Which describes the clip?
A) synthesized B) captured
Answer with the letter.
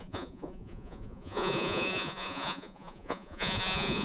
A